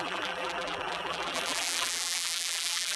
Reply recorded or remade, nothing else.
remade